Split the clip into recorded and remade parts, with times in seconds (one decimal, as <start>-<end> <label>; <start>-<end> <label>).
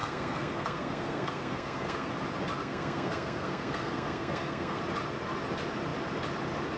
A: 0.0-2.1 remade; 2.1-2.6 recorded; 2.6-4.8 remade; 4.8-6.8 recorded